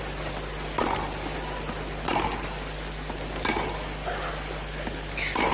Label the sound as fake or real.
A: real